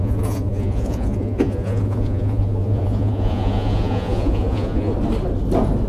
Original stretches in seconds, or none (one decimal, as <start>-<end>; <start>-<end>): 4.9-5.9